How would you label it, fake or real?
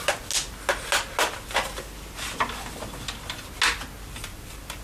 real